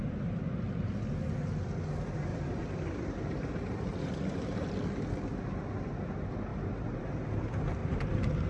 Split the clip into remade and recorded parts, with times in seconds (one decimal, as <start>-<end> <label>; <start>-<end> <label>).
0.0-2.3 recorded; 2.3-4.7 remade; 4.7-6.5 recorded; 6.5-7.2 remade; 7.2-7.8 recorded; 7.8-8.5 remade